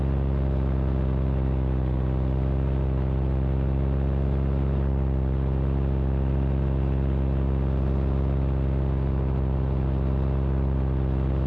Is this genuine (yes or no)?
yes